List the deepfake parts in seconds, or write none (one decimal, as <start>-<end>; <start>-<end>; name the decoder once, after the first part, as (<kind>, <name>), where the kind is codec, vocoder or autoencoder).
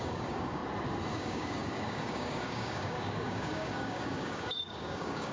0.0-0.6 (codec, DAC); 1.1-5.3